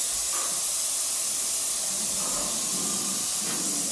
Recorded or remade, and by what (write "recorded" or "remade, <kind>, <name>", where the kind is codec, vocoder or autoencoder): recorded